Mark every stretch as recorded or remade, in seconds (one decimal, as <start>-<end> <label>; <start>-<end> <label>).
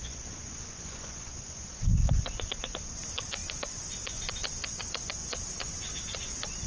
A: 0.0-6.7 remade